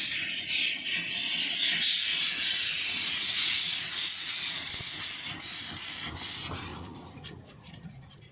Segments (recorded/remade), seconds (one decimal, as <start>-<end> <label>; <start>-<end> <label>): 0.0-2.1 recorded; 2.1-4.7 remade; 4.7-6.7 recorded; 6.7-8.3 remade